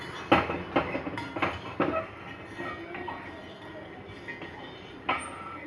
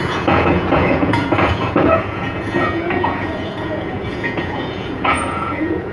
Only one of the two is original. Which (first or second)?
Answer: first